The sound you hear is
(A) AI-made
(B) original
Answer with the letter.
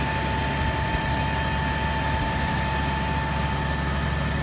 B